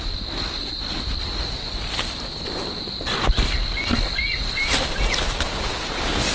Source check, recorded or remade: recorded